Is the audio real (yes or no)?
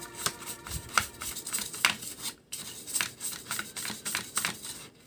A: yes